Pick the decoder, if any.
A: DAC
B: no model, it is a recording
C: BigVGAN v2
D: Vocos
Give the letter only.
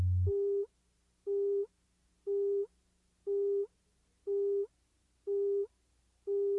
B